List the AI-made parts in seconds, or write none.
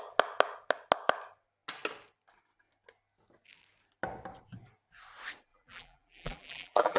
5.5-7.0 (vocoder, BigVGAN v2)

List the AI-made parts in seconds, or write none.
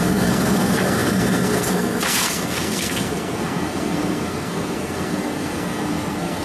0.0-6.4 (codec, SNAC)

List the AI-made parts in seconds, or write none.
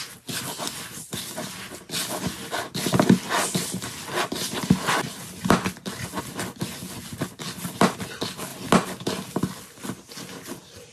none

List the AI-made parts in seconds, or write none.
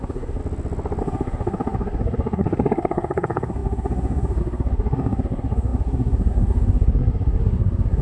0.0-0.4 (codec, SNAC); 1.0-8.0